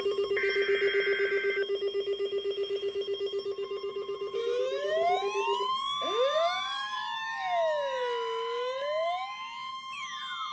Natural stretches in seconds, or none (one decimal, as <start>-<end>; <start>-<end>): 0.7-1.3